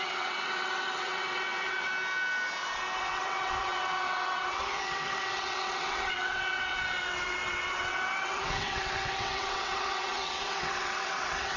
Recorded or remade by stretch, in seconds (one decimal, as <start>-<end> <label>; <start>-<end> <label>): 0.0-1.9 remade; 1.9-3.0 recorded; 3.0-11.6 remade